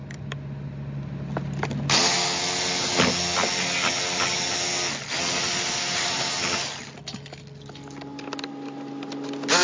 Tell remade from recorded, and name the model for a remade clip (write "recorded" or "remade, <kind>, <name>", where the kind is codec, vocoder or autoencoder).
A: recorded